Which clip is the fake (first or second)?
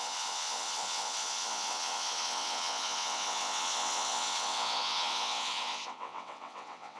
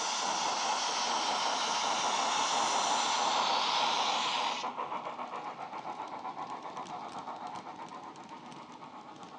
first